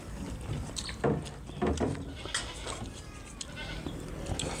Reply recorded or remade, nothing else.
recorded